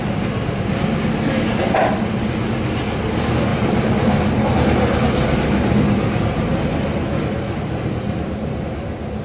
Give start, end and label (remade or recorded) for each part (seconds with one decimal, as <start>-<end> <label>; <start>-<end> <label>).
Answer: 0.0-9.2 recorded